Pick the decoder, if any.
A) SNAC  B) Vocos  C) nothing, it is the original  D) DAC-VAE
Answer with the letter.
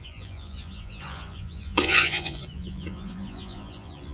B